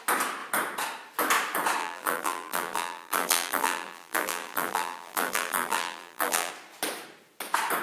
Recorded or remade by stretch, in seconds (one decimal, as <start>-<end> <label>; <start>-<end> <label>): 0.0-1.8 recorded; 1.8-6.5 remade; 6.5-7.8 recorded